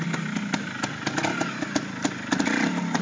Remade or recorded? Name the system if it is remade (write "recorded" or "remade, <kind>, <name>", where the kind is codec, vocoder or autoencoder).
recorded